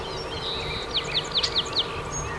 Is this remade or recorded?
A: recorded